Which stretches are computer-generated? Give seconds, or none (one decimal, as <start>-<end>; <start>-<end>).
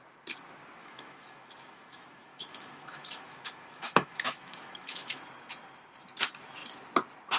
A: 0.8-5.2